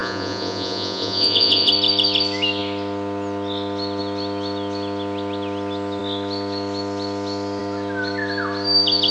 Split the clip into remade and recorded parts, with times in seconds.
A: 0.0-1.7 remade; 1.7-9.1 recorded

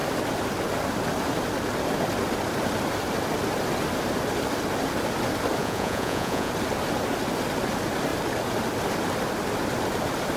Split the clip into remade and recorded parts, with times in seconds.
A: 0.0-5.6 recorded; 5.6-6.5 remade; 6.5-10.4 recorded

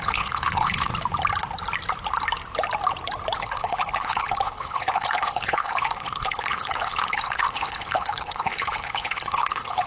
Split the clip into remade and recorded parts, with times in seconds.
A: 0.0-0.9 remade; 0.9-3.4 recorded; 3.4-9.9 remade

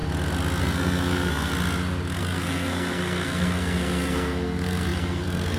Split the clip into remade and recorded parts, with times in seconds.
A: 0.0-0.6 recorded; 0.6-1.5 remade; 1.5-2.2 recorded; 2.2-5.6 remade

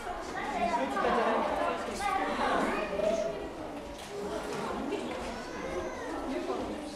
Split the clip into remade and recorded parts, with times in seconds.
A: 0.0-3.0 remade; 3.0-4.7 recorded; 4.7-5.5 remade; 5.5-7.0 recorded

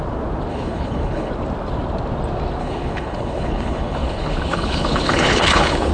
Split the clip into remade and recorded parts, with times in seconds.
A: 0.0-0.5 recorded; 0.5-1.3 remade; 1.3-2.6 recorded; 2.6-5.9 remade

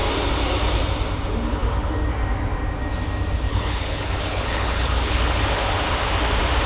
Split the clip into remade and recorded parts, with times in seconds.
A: 0.0-3.5 recorded; 3.5-5.4 remade; 5.4-6.7 recorded